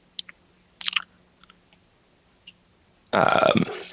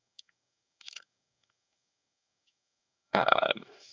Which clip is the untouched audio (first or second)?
first